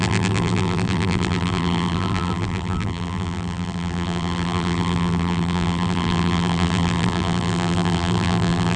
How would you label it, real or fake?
fake